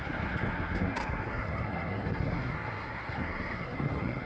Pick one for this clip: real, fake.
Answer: fake